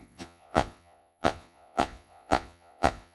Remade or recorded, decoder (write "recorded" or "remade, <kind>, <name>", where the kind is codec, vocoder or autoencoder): remade, vocoder, Vocos